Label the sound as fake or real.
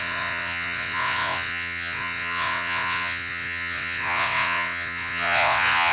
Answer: fake